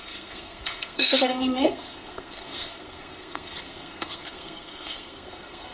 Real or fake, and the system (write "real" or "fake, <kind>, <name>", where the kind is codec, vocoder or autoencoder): fake, codec, SNAC